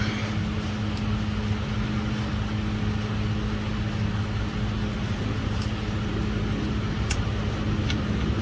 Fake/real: real